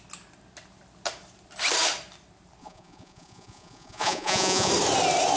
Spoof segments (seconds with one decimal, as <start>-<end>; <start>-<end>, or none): 2.6-4.7